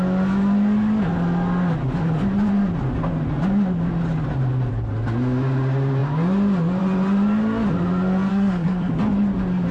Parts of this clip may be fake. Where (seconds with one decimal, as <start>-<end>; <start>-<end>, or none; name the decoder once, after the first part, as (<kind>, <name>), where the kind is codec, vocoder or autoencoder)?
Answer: 8.3-8.9 (codec, SNAC)